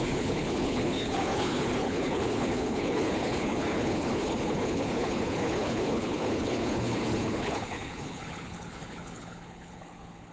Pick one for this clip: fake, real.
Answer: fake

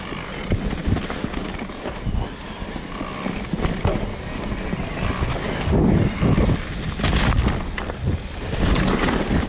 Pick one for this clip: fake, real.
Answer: real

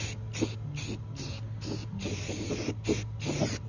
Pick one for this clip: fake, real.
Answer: real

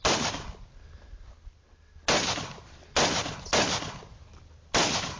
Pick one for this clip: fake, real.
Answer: real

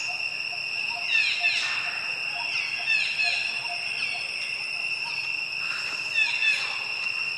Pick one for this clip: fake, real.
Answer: real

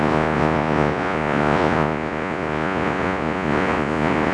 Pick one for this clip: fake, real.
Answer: fake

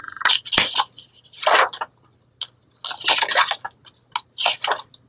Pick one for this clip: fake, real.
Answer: real